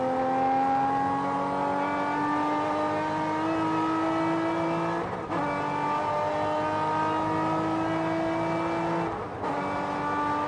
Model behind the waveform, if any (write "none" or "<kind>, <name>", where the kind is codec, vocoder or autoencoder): none